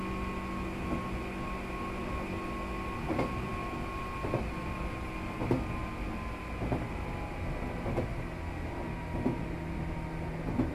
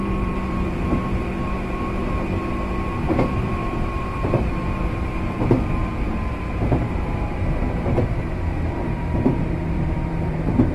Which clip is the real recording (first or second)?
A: first